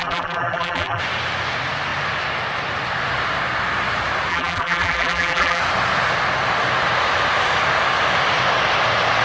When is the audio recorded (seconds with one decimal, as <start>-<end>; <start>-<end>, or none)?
1.0-4.3; 5.6-9.2